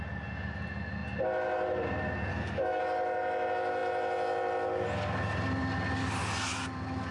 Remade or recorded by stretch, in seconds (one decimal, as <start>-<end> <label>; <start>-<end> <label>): 0.0-2.3 recorded; 2.3-2.8 remade; 2.8-7.1 recorded